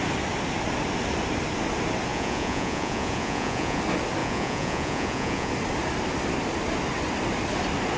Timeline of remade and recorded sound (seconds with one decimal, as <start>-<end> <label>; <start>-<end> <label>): 0.0-2.1 recorded; 2.1-3.8 remade; 3.8-4.2 recorded; 4.2-5.5 remade; 5.5-8.0 recorded